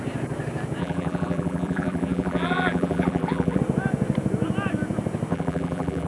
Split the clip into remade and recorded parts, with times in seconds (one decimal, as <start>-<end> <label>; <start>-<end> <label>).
0.0-0.8 recorded; 0.8-3.6 remade; 3.6-5.3 recorded; 5.3-6.1 remade

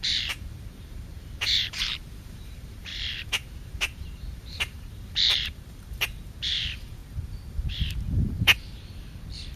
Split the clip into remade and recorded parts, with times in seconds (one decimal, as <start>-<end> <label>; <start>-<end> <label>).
0.0-9.6 remade

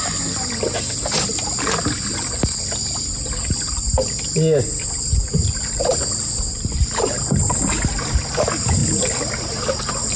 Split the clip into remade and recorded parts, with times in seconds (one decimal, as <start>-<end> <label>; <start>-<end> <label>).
0.0-10.2 recorded

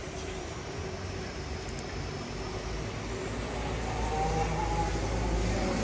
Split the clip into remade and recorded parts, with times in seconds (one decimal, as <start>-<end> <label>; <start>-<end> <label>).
0.0-0.9 remade; 0.9-5.8 recorded

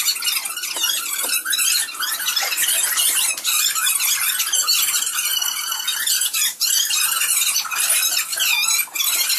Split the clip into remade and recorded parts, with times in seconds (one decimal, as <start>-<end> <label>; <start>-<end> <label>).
0.0-9.4 recorded

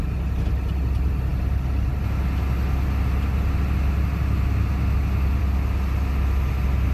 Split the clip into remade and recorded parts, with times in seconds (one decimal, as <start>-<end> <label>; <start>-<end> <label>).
0.0-6.9 recorded